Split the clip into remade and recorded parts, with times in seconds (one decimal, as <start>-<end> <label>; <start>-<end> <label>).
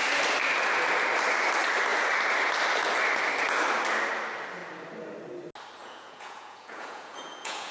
0.0-5.8 recorded; 5.8-7.7 remade